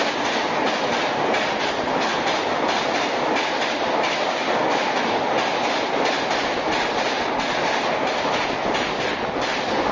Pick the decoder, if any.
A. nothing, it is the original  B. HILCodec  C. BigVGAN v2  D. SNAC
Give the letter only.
A